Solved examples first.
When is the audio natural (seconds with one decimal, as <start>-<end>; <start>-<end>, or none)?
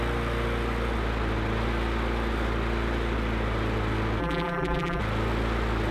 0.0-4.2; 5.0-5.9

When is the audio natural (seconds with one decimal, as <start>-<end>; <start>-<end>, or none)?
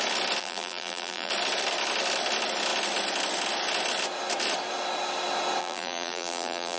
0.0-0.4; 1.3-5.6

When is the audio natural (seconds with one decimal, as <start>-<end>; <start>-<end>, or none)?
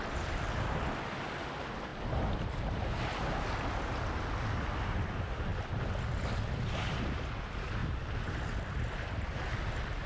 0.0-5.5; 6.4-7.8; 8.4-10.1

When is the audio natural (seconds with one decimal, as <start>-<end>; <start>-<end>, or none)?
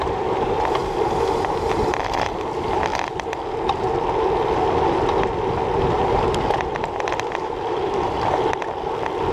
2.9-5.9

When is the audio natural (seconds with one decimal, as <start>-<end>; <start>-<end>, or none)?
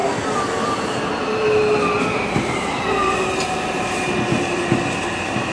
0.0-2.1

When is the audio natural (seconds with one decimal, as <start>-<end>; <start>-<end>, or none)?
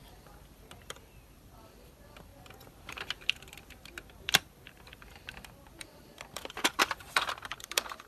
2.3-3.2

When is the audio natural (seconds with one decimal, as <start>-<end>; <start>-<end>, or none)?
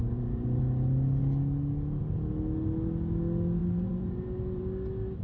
0.6-3.6; 4.6-5.2